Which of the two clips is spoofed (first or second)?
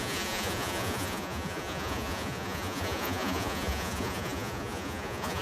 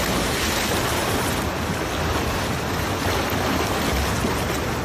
first